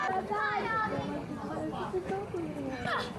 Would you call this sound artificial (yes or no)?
no